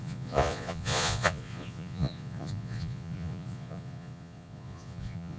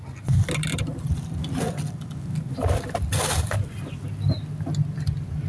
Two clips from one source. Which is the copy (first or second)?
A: first